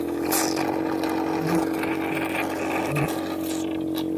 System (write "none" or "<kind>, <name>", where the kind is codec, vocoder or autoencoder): none